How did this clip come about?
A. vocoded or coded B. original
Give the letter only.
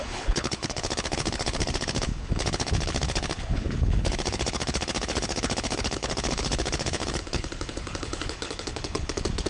A